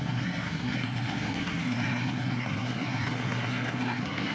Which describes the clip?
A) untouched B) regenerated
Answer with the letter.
B